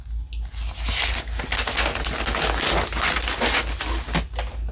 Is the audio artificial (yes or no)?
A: no